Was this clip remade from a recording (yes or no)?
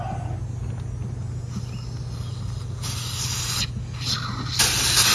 no